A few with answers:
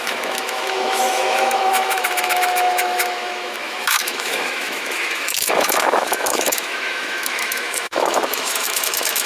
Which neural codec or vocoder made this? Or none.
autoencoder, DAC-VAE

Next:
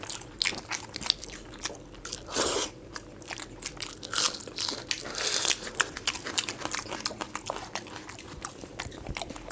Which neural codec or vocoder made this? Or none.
none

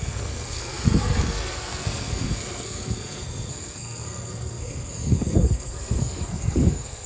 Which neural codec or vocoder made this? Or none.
codec, SNAC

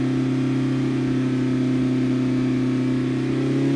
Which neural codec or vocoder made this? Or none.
none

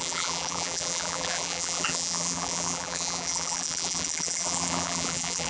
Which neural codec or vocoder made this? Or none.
vocoder, BigVGAN v2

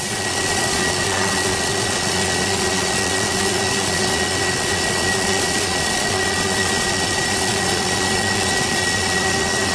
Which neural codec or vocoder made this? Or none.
vocoder, Vocos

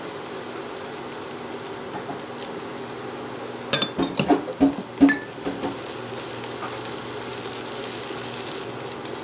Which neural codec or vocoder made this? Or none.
none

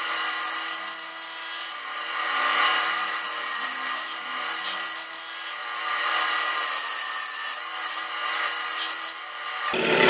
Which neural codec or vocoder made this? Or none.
none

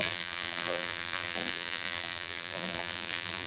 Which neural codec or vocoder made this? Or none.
vocoder, BigVGAN v2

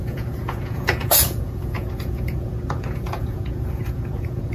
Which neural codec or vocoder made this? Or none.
vocoder, Vocos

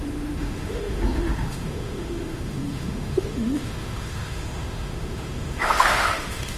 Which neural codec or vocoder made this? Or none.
autoencoder, DAC-VAE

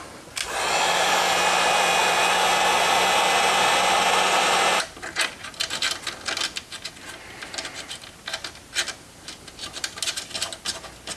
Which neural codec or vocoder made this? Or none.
none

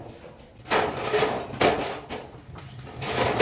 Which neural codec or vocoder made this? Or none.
none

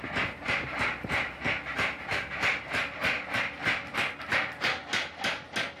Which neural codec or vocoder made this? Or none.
none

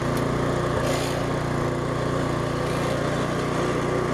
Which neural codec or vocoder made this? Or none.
none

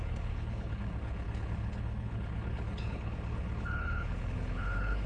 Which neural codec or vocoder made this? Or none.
codec, HILCodec